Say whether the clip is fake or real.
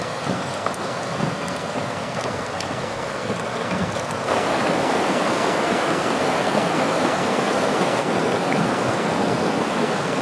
fake